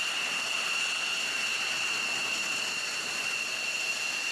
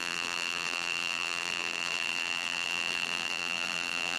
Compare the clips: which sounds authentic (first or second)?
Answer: first